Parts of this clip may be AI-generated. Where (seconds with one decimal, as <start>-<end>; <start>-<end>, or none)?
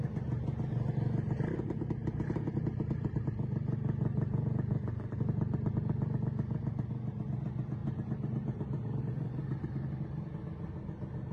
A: 2.0-5.7; 7.8-9.0